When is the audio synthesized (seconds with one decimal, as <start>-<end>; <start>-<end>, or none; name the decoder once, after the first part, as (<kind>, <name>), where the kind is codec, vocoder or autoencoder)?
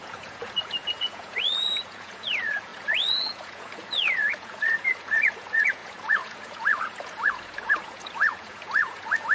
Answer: 0.0-9.3 (vocoder, Vocos)